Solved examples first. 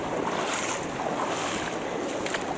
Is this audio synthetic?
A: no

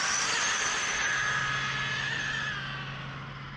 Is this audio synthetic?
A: no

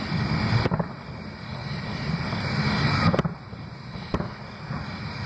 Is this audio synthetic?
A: no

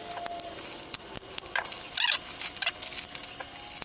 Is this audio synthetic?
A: no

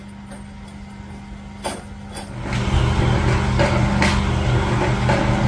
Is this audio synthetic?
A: no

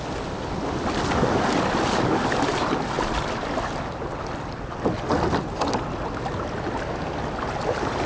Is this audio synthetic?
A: no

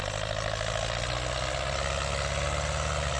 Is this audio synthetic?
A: no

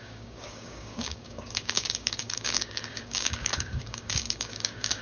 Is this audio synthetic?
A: yes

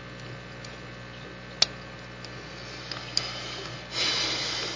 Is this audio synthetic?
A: no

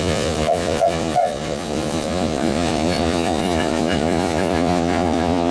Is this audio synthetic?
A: yes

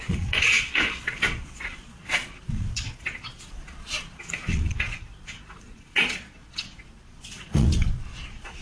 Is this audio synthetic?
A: yes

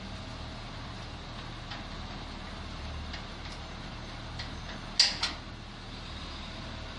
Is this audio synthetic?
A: no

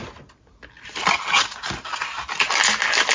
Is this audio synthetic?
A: no